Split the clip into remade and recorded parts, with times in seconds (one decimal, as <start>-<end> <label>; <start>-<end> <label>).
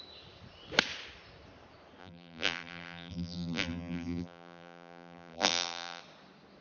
0.0-2.0 recorded; 2.0-6.0 remade; 6.0-6.6 recorded